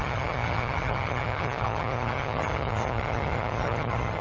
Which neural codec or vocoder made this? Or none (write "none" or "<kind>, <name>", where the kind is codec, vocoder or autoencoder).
vocoder, HiFi-GAN